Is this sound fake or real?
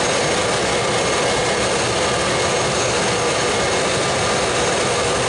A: real